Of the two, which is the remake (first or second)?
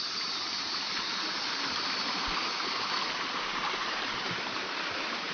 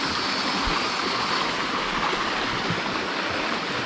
first